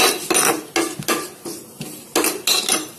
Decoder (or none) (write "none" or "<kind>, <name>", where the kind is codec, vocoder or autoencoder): none